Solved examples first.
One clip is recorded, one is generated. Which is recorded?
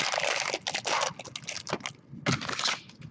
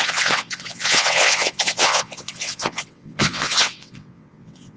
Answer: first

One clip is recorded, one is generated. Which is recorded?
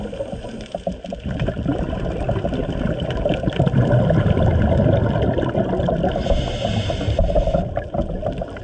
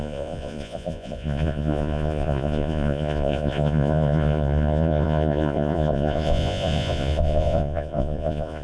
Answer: first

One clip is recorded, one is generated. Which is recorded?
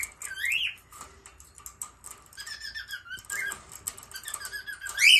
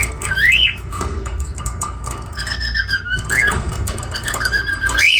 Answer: first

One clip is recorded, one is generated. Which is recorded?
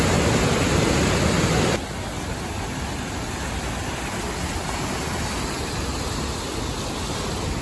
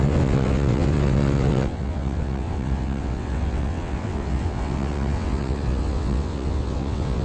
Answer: first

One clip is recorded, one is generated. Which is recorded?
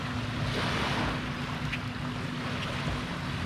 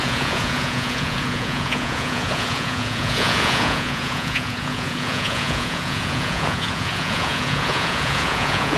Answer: first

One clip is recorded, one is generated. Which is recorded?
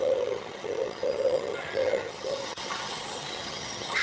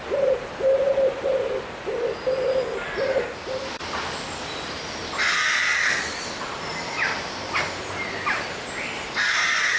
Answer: second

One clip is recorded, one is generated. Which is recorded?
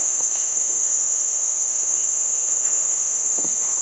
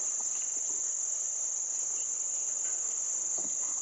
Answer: second